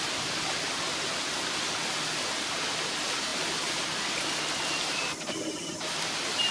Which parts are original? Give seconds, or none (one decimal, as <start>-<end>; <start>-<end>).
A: 0.0-6.5